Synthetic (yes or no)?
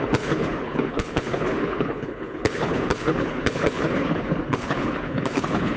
yes